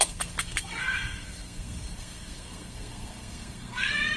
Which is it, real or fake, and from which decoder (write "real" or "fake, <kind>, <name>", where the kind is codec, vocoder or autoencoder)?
fake, codec, SNAC